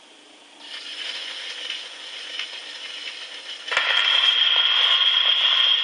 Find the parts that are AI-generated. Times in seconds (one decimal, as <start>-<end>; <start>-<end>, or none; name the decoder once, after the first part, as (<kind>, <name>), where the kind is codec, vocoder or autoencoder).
0.9-2.6 (vocoder, Vocos)

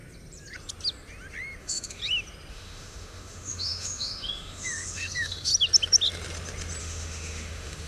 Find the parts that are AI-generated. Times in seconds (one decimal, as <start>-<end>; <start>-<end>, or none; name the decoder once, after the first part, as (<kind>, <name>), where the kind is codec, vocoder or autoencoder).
1.6-2.0 (autoencoder, DAC-VAE); 2.5-5.5; 6.8-7.9

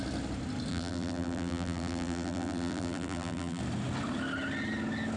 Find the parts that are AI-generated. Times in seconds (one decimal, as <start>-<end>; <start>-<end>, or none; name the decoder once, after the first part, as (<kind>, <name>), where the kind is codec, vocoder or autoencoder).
0.7-3.6 (vocoder, BigVGAN v2)

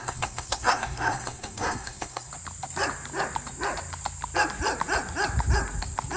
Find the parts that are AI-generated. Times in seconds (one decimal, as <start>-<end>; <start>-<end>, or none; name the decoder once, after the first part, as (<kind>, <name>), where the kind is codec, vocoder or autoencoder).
0.0-2.3 (codec, SNAC)